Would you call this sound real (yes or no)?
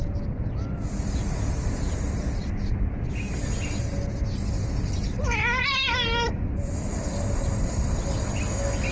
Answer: yes